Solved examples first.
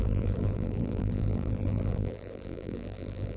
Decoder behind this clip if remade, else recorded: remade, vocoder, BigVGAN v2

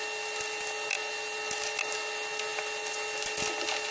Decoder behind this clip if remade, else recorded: recorded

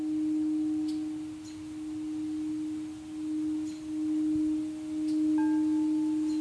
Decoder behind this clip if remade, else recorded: recorded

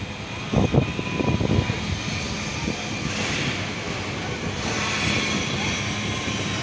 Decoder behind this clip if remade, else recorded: recorded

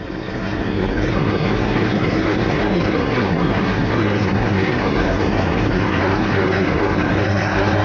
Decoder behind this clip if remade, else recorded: remade, codec, SNAC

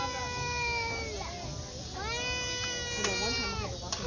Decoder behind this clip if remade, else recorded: recorded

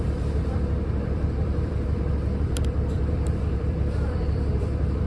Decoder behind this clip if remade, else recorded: remade, vocoder, BigVGAN v2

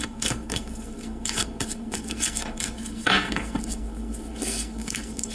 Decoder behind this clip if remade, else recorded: remade, codec, SNAC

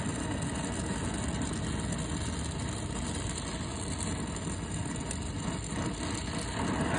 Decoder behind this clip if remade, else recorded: recorded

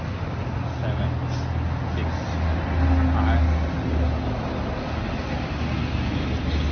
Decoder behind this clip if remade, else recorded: recorded